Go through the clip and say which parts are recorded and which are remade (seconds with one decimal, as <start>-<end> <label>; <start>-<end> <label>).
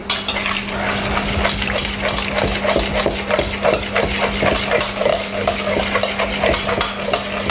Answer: 0.0-5.1 recorded; 5.1-5.8 remade; 5.8-7.5 recorded